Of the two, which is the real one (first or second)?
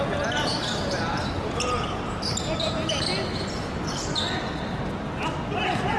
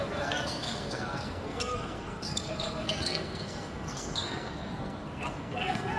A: first